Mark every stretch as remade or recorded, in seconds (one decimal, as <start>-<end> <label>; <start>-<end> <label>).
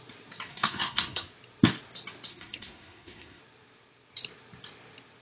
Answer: 0.0-0.5 recorded; 0.5-1.3 remade; 1.3-2.3 recorded; 2.3-3.4 remade; 3.4-5.2 recorded